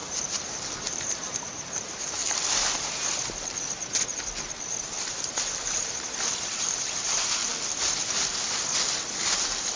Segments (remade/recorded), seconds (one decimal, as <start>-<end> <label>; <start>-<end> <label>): 0.0-2.2 remade; 2.2-5.1 recorded; 5.1-7.4 remade; 7.4-9.8 recorded